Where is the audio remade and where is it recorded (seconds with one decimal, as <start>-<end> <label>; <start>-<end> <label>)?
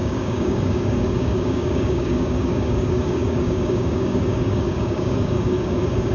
0.0-6.1 remade